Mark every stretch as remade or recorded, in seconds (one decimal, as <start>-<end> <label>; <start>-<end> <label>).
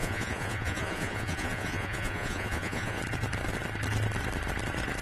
0.0-3.0 remade; 3.0-5.0 recorded